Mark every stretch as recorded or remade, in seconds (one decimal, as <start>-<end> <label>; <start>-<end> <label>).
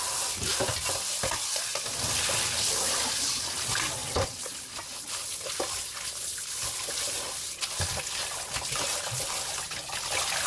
0.0-10.5 recorded